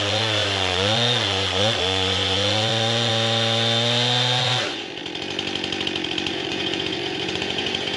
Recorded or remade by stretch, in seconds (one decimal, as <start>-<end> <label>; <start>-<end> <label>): 0.0-3.1 remade; 3.1-4.4 recorded; 4.4-5.0 remade; 5.0-6.3 recorded; 6.3-8.0 remade